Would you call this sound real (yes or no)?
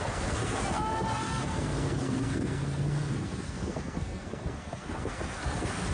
no